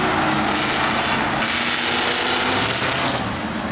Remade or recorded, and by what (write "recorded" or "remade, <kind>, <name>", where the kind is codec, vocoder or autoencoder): recorded